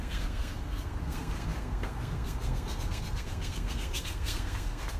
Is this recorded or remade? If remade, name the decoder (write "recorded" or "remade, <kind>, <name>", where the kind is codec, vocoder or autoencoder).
remade, codec, SNAC